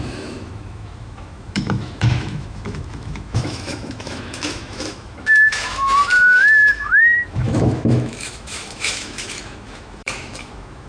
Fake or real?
fake